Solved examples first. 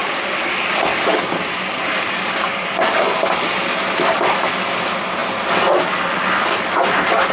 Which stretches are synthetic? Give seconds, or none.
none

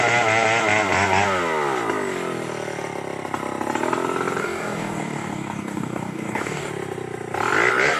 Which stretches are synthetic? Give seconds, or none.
4.4-6.7 (codec, DAC)